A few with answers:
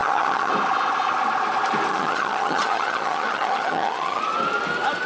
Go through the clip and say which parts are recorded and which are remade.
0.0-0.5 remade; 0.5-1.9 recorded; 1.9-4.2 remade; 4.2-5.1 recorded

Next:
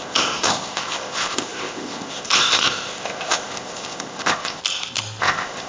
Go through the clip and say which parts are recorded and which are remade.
0.0-4.6 remade; 4.6-5.2 recorded; 5.2-5.7 remade

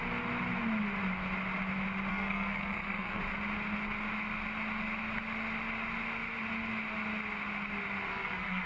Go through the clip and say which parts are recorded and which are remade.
0.0-2.1 recorded; 2.1-3.2 remade; 3.2-8.1 recorded; 8.1-8.7 remade